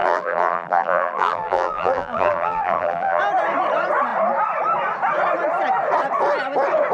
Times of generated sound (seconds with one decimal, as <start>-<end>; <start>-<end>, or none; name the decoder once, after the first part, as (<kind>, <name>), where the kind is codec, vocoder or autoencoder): 0.0-3.2 (vocoder, BigVGAN v2)